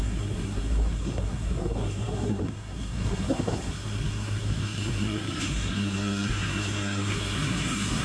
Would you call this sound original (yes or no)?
no